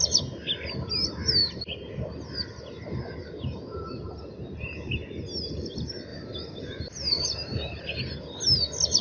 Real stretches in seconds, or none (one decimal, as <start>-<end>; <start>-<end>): 0.0-1.4; 2.1-6.1; 7.9-9.0